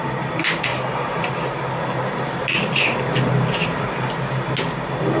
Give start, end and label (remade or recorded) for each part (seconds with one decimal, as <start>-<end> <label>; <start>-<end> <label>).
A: 0.0-5.2 recorded